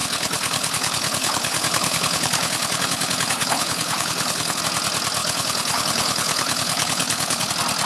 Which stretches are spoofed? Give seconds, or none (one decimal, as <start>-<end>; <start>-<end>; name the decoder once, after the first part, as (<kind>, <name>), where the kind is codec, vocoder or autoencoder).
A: 0.0-4.6 (codec, HILCodec); 5.2-7.5